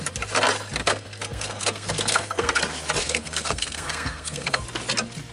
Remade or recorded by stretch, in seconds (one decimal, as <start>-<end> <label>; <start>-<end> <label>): 0.0-0.8 recorded; 0.8-2.6 remade; 2.6-3.0 recorded; 3.0-4.6 remade; 4.6-5.3 recorded